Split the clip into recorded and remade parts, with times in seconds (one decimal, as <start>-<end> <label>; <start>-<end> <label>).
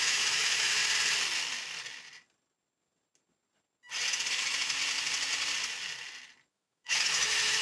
0.0-0.8 remade; 0.8-4.3 recorded; 4.3-4.8 remade; 4.8-6.5 recorded; 6.5-7.6 remade